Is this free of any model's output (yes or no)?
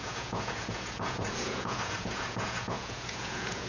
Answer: no